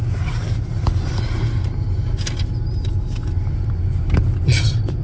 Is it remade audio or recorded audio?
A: recorded